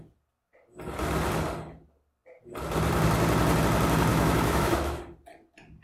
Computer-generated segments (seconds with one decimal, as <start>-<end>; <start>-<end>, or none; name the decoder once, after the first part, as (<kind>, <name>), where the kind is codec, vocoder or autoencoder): 4.1-5.0 (autoencoder, DAC-VAE)